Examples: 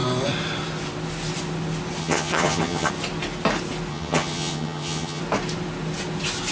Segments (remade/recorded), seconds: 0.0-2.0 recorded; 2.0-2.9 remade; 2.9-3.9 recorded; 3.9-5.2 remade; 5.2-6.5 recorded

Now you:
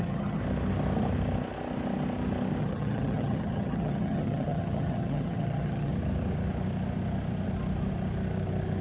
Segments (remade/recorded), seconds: 0.0-0.4 remade; 0.4-2.6 recorded; 2.6-5.9 remade; 5.9-8.8 recorded